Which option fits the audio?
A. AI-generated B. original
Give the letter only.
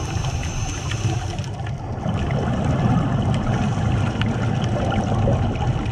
B